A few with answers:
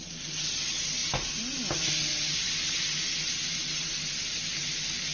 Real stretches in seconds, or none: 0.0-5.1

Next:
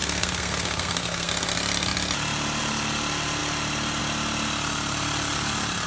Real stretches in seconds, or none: 1.3-5.9